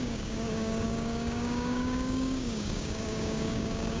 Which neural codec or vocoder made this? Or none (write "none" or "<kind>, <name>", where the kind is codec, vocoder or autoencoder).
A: codec, DAC